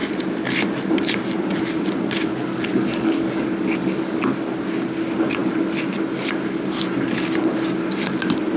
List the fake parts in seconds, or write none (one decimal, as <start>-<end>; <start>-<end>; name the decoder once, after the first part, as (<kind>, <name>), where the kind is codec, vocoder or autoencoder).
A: 2.4-4.3 (codec, DAC)